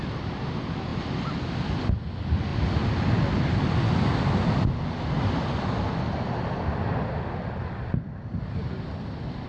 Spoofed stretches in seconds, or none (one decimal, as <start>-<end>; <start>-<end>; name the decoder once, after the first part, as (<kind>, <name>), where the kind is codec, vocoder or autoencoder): none

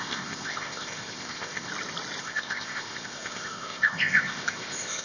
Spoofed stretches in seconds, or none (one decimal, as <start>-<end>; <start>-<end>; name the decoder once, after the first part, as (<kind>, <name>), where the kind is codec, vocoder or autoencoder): 0.0-1.7 (codec, ZipCodec); 2.2-5.0